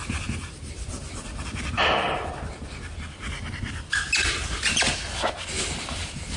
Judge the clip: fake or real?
real